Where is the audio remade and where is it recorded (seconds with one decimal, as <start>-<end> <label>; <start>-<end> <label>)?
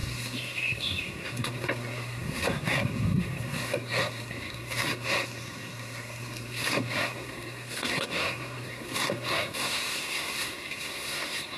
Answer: 0.0-11.6 remade